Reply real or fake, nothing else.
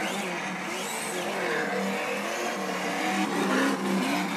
real